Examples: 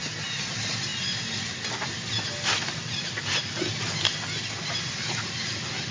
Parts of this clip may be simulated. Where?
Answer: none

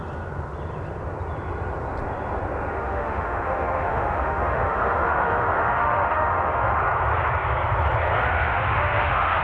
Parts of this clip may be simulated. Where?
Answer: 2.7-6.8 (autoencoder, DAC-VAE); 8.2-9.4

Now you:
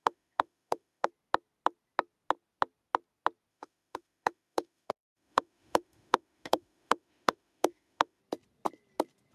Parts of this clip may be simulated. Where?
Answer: 0.0-1.1 (autoencoder, DAC-VAE); 3.5-8.2

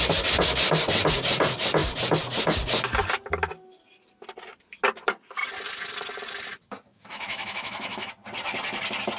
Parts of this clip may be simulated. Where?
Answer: 6.9-8.1 (autoencoder, DAC-VAE)

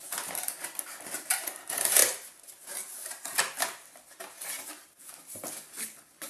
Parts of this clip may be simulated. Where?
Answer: none

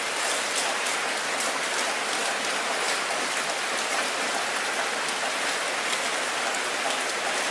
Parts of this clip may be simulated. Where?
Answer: none

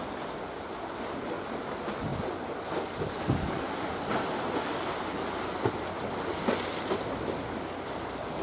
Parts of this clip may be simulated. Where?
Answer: none

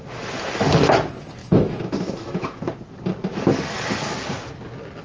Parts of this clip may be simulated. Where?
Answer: 1.4-2.6 (autoencoder, DAC-VAE)